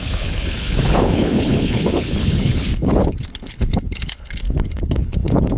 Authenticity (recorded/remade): remade